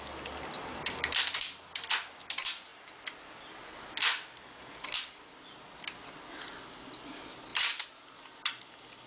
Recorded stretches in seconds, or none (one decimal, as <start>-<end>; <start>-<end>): 0.0-7.5; 8.0-9.1